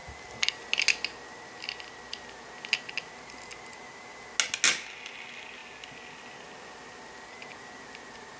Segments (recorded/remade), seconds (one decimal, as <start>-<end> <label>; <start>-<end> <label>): 0.0-8.4 recorded